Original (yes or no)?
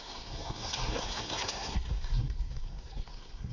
no